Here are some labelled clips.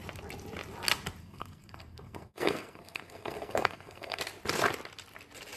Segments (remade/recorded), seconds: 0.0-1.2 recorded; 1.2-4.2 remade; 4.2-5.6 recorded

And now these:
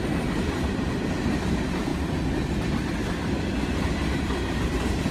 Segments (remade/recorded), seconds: 0.0-5.1 recorded